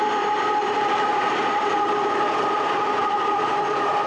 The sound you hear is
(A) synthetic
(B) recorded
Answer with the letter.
A